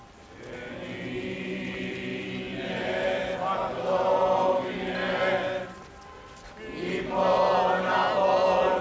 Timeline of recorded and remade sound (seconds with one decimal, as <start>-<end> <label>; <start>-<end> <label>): 0.0-8.8 recorded